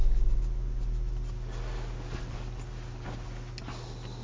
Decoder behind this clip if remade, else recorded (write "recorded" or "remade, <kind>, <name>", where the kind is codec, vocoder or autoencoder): recorded